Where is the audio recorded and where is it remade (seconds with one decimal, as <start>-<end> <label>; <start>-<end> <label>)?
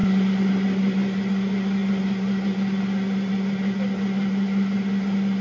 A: 0.0-5.4 recorded